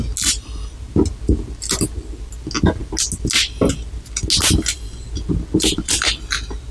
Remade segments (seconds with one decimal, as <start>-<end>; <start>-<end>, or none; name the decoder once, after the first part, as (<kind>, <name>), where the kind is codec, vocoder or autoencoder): none